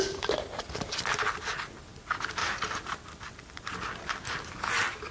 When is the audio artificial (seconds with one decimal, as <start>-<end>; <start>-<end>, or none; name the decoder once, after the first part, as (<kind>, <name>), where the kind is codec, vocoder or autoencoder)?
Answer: none